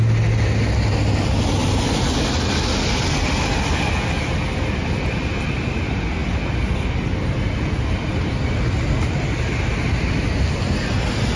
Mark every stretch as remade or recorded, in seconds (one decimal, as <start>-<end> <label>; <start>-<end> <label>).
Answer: 0.0-11.4 recorded